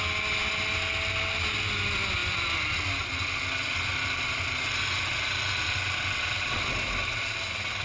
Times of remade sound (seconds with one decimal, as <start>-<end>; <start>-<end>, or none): none